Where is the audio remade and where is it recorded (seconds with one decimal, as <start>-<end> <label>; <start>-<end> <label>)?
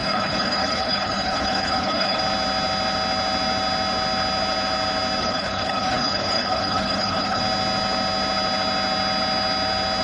0.0-2.2 remade; 2.2-5.2 recorded; 5.2-7.4 remade; 7.4-10.0 recorded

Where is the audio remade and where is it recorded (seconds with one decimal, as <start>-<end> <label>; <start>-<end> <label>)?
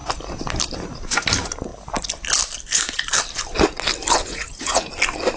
0.0-4.2 recorded; 4.2-4.9 remade; 4.9-5.4 recorded